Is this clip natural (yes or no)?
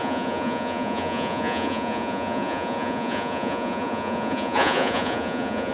no